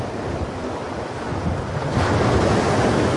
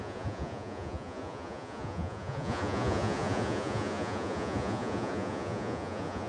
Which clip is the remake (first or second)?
second